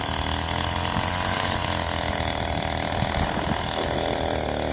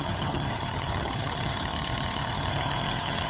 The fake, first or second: second